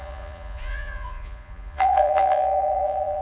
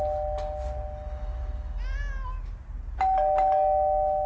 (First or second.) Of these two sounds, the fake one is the first